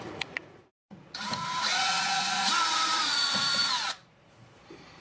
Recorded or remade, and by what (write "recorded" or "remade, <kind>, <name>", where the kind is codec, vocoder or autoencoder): remade, vocoder, Vocos